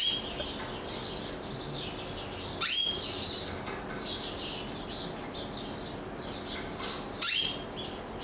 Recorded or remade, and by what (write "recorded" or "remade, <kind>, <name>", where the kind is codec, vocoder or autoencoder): recorded